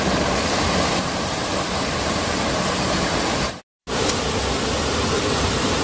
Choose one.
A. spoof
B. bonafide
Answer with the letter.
B